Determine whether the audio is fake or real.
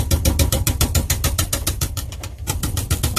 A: fake